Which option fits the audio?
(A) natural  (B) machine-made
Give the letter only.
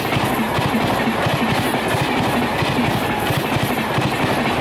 A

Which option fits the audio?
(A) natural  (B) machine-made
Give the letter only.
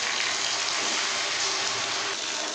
A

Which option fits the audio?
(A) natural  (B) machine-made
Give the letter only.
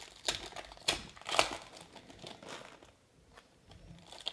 A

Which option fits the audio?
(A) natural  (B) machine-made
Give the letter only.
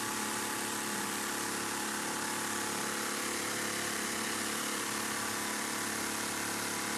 A